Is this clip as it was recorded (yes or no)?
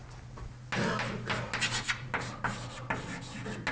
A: yes